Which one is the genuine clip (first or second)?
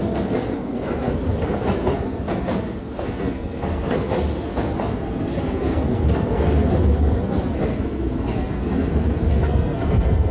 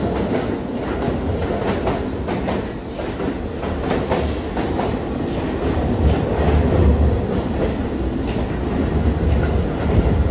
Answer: second